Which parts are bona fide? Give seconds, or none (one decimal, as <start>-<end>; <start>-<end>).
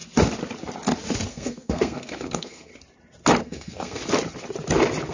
0.0-1.3; 2.7-3.4; 4.0-5.1